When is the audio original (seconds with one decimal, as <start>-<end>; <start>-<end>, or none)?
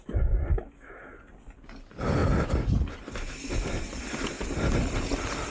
0.0-0.5; 1.2-5.5